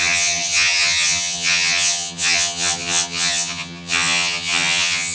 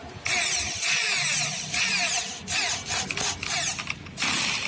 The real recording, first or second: second